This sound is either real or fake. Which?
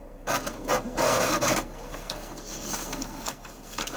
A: fake